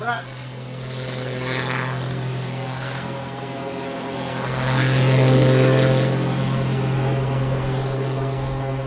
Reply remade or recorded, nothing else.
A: remade